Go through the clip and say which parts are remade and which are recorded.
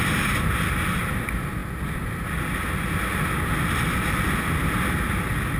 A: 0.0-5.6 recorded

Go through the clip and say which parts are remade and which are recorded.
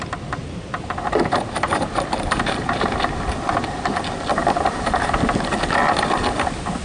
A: 0.0-0.4 recorded; 0.4-3.0 remade; 3.0-4.4 recorded; 4.4-5.3 remade; 5.3-6.8 recorded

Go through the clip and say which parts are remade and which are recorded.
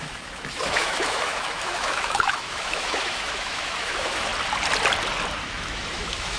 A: 0.0-4.3 remade; 4.3-5.4 recorded; 5.4-6.4 remade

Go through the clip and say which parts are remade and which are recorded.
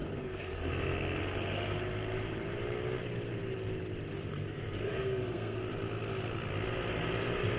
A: 0.0-0.7 remade; 0.7-4.3 recorded; 4.3-5.6 remade; 5.6-7.6 recorded